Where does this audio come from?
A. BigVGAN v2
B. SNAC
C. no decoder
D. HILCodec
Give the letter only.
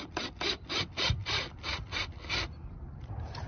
C